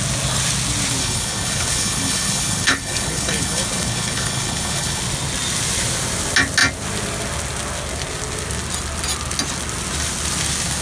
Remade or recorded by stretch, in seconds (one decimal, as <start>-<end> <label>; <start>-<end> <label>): 0.0-1.0 recorded; 1.0-5.0 remade; 5.0-10.8 recorded